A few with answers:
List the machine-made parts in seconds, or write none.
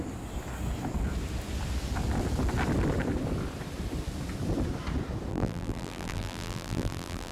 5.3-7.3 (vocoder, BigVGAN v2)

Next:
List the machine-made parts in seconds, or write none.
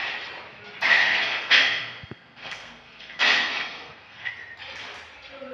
1.0-4.3 (codec, SNAC)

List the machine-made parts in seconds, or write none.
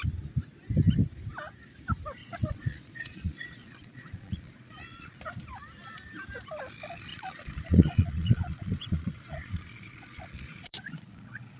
2.2-5.2 (vocoder, Vocos); 7.1-11.6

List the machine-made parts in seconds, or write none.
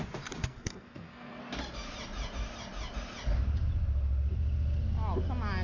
0.4-1.4 (codec, SNAC)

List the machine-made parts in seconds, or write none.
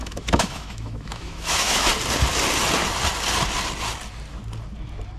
0.0-1.9 (autoencoder, DAC-VAE)